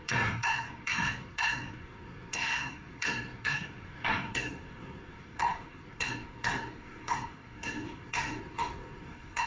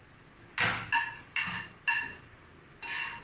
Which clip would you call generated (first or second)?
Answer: first